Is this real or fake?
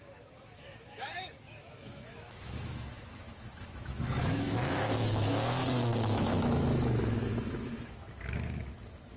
fake